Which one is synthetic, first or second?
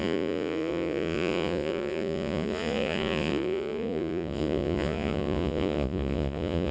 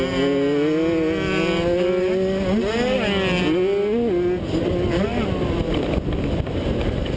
first